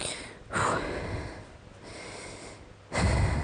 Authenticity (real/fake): real